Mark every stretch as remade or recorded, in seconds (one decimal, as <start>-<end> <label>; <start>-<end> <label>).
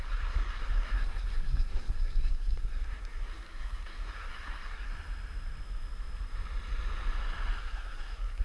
0.0-4.9 remade; 4.9-7.6 recorded; 7.6-8.4 remade